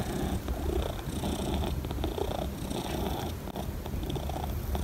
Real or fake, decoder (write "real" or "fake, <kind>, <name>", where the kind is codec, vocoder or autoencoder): real